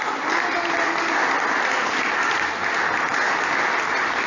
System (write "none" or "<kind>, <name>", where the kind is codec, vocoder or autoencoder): none